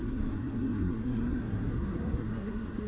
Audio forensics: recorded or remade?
remade